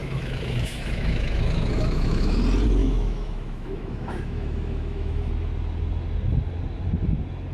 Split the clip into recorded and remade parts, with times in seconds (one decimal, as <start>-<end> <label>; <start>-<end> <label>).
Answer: 0.0-2.4 remade; 2.4-2.8 recorded; 2.8-5.3 remade; 5.3-7.5 recorded